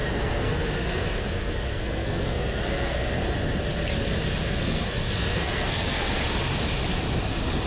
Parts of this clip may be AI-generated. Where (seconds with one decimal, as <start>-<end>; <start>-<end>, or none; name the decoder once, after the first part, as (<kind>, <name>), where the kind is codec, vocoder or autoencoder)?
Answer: 0.0-3.2 (codec, SNAC); 4.5-6.2